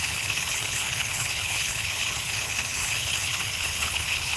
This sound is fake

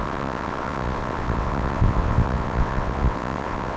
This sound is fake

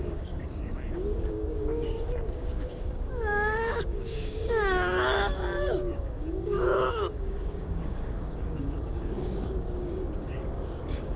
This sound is fake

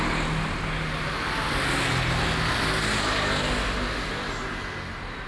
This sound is real